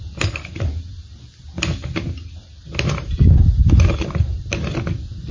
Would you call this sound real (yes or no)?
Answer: yes